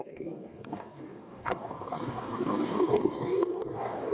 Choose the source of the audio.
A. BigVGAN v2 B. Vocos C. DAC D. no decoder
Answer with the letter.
C